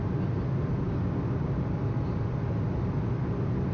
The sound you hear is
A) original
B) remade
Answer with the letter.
A